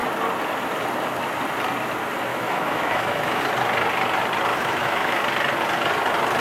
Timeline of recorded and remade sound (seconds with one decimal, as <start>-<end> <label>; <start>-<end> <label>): 0.0-2.3 recorded; 2.3-3.4 remade; 3.4-4.5 recorded; 4.5-5.2 remade; 5.2-6.4 recorded